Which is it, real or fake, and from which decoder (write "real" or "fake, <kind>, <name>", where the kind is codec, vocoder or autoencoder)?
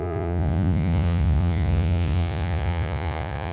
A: fake, vocoder, Vocos